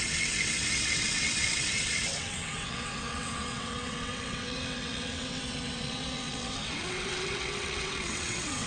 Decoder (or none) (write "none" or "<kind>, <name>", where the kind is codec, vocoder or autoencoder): vocoder, WaveNeXt